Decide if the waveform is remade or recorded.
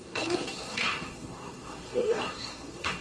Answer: remade